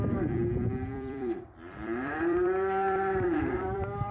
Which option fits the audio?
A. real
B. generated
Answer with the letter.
B